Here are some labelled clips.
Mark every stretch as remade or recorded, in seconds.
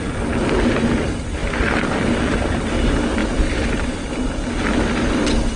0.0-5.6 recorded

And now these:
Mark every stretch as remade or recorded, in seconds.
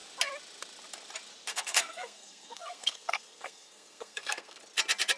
0.0-1.5 recorded; 1.5-4.6 remade; 4.6-5.2 recorded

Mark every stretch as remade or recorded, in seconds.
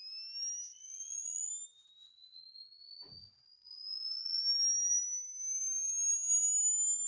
0.0-0.7 recorded; 0.7-1.5 remade; 1.5-2.0 recorded; 2.0-4.4 remade; 4.4-7.1 recorded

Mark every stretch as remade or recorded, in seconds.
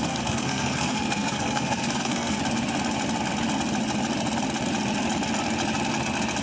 0.0-2.4 remade; 2.4-6.4 recorded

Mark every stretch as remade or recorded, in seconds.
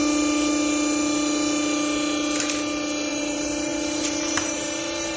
0.0-3.1 recorded; 3.1-5.2 remade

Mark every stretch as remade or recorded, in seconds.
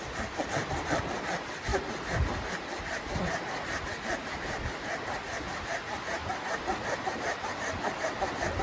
0.0-8.6 recorded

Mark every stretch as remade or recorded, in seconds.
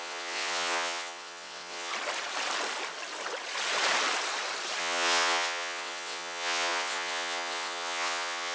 0.0-1.9 remade; 1.9-4.8 recorded; 4.8-8.5 remade